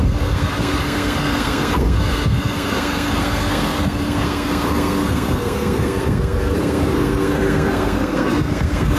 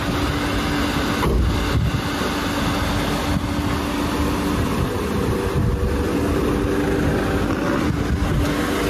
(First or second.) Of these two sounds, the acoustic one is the second